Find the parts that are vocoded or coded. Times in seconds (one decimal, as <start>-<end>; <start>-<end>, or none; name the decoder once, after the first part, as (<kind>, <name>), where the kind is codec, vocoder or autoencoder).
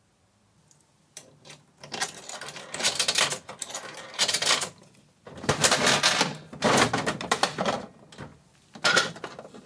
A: none